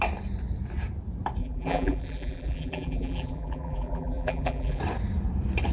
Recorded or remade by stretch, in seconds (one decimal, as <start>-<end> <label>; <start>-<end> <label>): 0.0-1.4 recorded; 1.4-4.8 remade; 4.8-5.7 recorded